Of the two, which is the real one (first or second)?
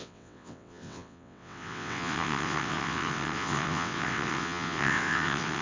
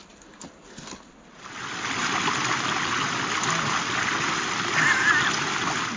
second